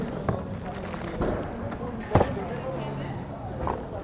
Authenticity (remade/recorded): recorded